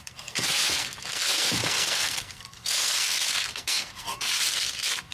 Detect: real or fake fake